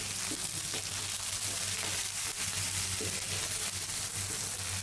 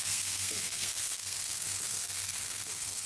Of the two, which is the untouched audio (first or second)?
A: first